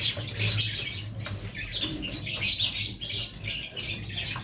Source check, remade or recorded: recorded